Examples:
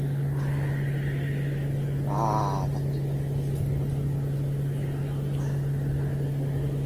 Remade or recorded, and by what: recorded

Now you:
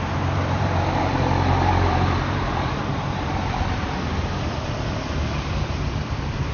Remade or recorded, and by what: remade, vocoder, BigVGAN v2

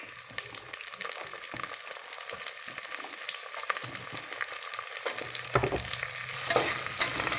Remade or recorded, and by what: recorded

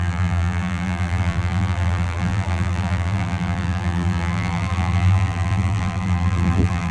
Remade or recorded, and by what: remade, vocoder, BigVGAN v2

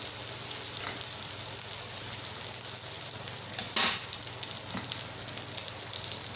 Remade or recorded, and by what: recorded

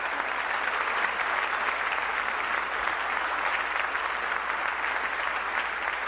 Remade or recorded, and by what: recorded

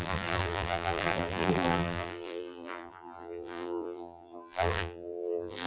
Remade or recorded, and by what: remade, vocoder, BigVGAN v2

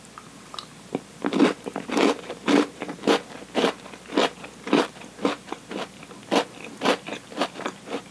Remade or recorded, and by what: remade, vocoder, BigVGAN v2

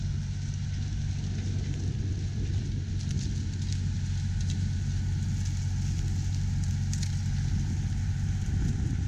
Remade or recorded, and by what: recorded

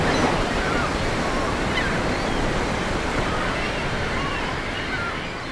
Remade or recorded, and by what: remade, vocoder, BigVGAN v2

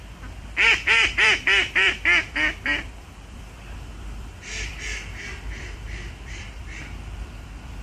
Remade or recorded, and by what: remade, vocoder, BigVGAN v2